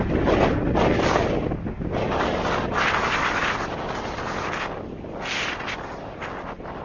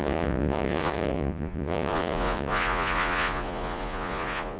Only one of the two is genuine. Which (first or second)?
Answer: first